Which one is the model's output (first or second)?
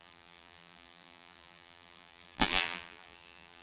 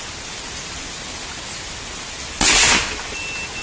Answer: first